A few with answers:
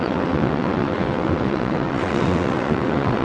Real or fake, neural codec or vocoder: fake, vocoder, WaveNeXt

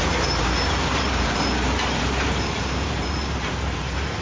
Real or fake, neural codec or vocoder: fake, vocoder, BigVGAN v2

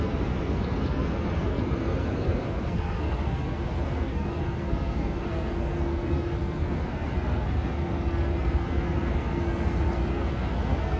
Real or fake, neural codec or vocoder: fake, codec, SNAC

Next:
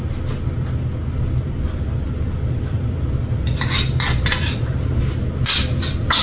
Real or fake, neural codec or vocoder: real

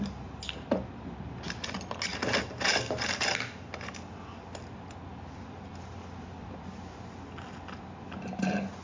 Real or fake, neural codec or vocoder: real